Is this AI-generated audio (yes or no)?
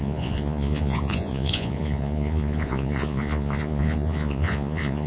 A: yes